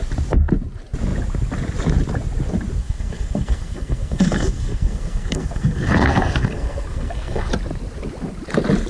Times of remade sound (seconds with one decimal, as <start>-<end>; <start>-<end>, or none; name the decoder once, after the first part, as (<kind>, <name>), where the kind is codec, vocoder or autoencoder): 2.8-7.5 (codec, SNAC)